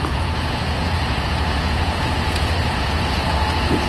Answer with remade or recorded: remade